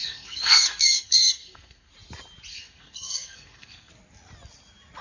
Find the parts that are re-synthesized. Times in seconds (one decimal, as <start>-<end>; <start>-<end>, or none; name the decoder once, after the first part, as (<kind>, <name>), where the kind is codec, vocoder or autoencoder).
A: 0.0-1.9 (codec, SNAC); 2.5-3.9